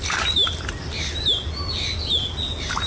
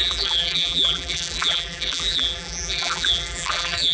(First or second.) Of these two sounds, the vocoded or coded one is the second